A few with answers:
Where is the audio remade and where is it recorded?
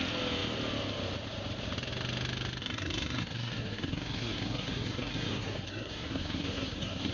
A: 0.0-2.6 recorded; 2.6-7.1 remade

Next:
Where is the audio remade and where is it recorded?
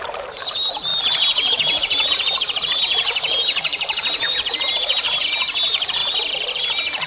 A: 0.0-6.0 remade; 6.0-7.1 recorded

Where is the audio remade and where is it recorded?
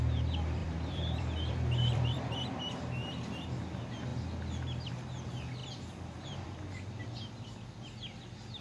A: 0.0-0.6 recorded; 0.6-2.6 remade; 2.6-5.6 recorded; 5.6-6.6 remade; 6.6-8.6 recorded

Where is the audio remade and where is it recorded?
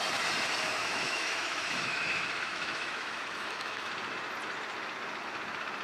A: 0.0-0.8 recorded; 0.8-3.9 remade; 3.9-5.8 recorded